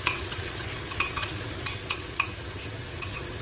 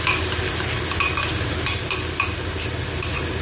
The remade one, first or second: first